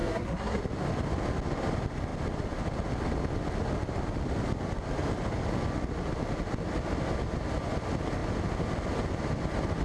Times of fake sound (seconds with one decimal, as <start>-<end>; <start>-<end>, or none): 0.0-0.6